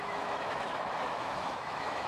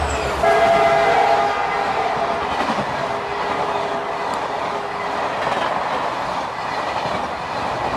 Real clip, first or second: second